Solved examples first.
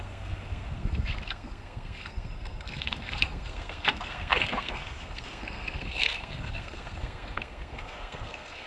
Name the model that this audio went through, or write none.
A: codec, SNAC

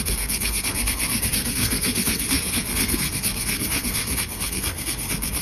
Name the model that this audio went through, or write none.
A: codec, SNAC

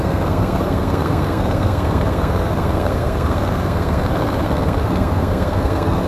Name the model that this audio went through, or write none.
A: codec, SNAC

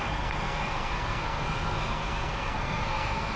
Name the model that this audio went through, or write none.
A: codec, SNAC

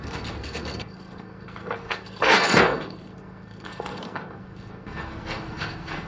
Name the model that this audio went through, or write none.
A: codec, SNAC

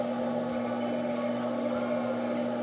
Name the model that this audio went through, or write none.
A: none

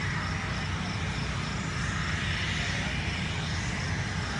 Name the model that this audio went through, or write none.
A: none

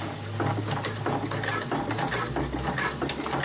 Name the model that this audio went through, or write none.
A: none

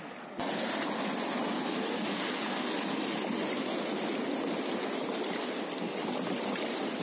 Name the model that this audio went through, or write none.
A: none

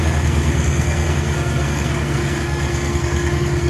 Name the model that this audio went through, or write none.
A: codec, SNAC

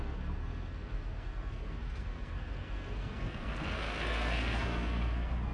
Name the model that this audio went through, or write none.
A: codec, SNAC